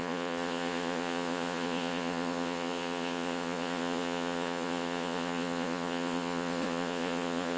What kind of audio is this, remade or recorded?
remade